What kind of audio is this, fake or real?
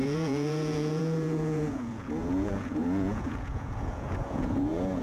fake